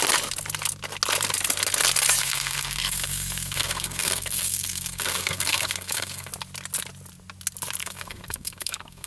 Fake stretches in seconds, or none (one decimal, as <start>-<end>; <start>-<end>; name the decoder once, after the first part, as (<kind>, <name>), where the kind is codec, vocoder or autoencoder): 2.2-6.3 (codec, SNAC); 7.8-9.1